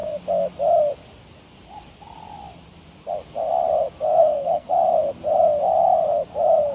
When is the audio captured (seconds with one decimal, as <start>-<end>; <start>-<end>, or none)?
0.0-4.2; 4.8-6.7